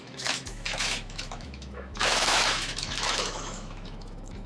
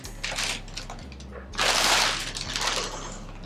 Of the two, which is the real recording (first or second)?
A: second